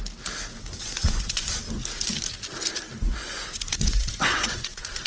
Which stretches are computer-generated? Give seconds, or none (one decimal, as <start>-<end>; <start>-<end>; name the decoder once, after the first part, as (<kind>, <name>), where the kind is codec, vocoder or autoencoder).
0.8-1.5 (vocoder, Vocos); 3.0-5.1